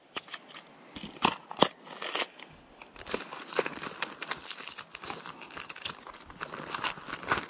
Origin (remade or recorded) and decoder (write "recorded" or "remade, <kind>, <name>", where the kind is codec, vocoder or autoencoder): recorded